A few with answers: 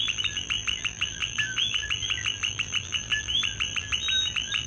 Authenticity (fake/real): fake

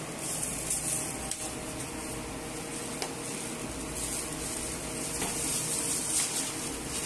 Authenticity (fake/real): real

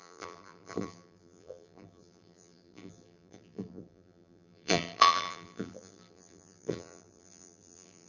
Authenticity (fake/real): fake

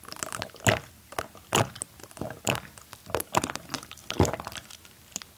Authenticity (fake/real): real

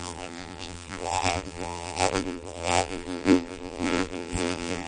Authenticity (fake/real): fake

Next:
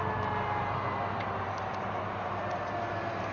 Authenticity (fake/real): real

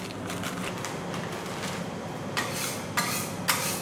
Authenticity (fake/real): real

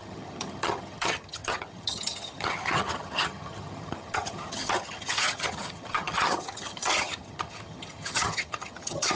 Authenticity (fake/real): fake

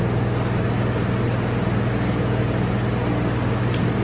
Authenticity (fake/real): real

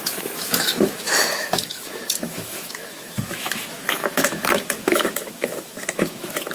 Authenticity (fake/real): fake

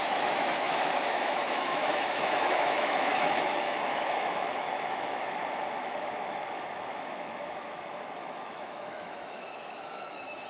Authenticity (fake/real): fake